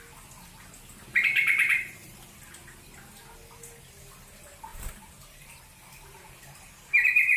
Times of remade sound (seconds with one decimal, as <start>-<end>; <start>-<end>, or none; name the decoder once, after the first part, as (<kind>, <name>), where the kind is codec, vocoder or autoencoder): 1.1-2.3 (vocoder, BigVGAN v2); 4.7-5.6; 6.1-7.4